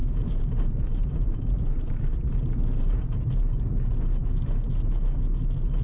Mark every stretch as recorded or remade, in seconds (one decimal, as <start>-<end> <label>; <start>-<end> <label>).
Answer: 0.0-3.3 remade; 3.3-5.8 recorded